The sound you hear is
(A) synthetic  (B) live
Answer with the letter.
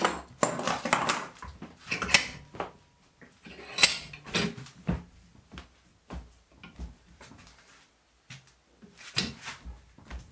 B